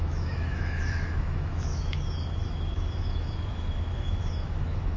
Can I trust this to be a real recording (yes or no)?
no